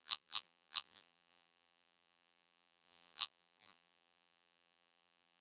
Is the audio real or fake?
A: fake